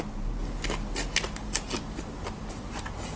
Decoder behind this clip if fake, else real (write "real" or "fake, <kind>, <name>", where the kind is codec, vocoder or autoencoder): real